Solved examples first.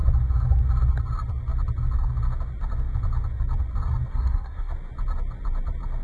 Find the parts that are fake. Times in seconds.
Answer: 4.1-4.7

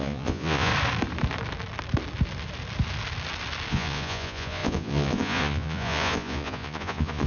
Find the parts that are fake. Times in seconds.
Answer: 0.0-0.7; 3.7-7.3

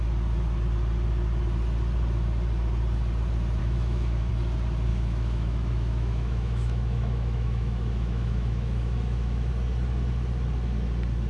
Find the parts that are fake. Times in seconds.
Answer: 3.6-4.3; 4.9-9.5